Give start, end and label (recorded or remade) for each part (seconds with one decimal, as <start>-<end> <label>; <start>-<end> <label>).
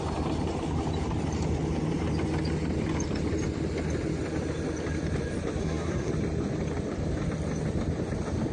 0.0-5.6 recorded; 5.6-6.1 remade; 6.1-8.5 recorded